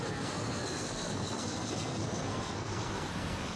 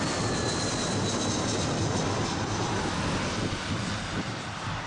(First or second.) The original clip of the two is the second